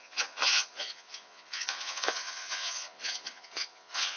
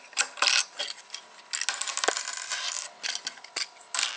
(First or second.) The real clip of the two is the second